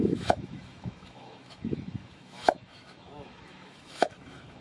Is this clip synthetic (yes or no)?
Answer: yes